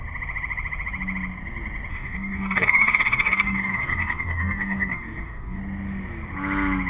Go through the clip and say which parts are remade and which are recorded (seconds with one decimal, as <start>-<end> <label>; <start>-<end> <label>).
0.0-1.9 recorded; 1.9-5.6 remade; 5.6-6.9 recorded